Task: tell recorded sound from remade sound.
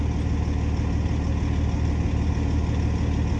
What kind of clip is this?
recorded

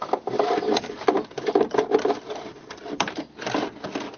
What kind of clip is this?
remade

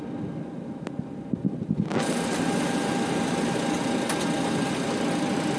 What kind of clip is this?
recorded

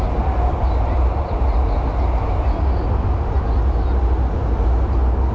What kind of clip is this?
recorded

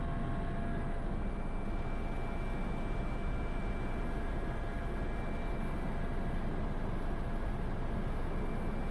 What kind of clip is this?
recorded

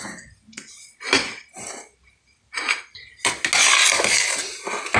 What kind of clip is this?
recorded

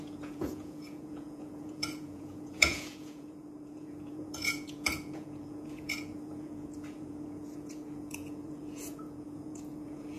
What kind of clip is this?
remade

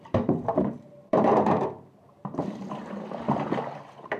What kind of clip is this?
remade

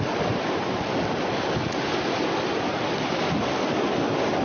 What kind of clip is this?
recorded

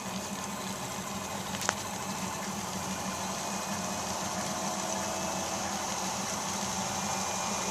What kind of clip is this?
recorded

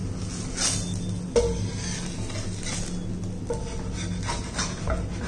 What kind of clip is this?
recorded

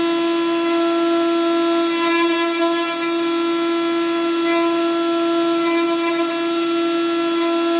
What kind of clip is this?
recorded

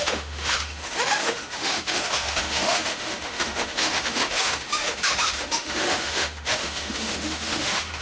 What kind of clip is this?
remade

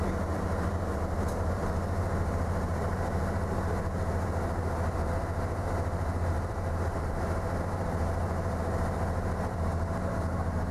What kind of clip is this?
remade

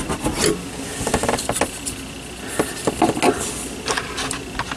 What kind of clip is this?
recorded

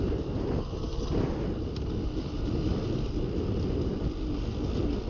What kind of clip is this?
remade